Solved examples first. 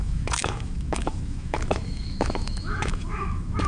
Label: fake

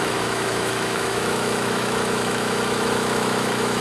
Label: fake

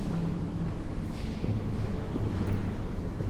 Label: fake